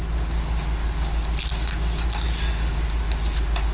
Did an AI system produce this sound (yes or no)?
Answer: no